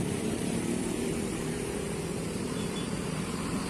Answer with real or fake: fake